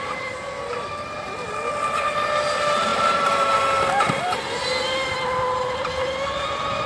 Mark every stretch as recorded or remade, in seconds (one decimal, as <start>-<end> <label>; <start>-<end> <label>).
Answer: 0.0-6.9 recorded